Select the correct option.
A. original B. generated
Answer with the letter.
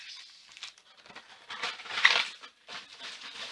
A